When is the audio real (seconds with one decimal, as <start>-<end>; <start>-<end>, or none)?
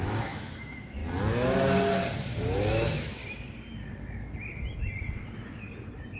1.0-2.7; 3.2-6.2